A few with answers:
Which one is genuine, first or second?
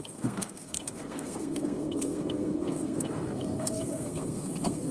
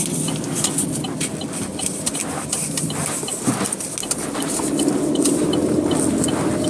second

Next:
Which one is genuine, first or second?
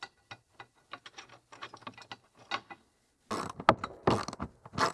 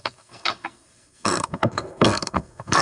first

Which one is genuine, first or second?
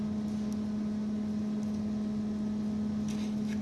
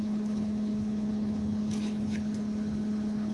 first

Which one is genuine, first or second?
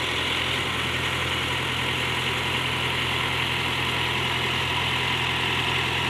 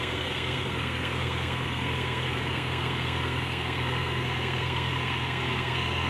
first